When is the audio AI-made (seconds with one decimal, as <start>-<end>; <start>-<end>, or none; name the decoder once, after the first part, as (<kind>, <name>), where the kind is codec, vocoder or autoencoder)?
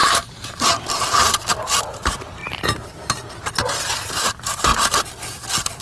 0.0-2.4 (vocoder, BigVGAN v2); 3.7-4.7